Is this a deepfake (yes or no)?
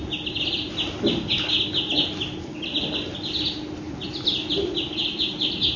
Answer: no